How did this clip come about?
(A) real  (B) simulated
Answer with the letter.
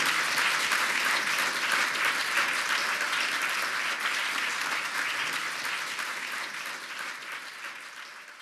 A